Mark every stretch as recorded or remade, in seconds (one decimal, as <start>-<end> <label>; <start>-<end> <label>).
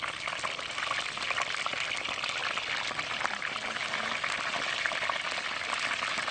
0.0-6.3 recorded